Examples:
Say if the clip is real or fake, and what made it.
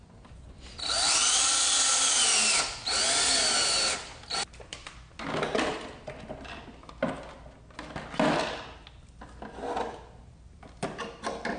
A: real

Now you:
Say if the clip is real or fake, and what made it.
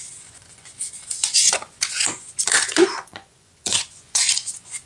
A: fake, vocoder, Vocos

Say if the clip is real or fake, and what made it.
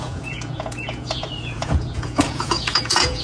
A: fake, vocoder, Vocos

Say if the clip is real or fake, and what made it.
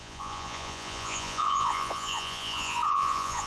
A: fake, vocoder, Vocos